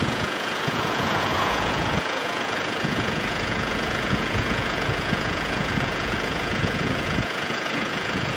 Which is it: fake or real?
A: fake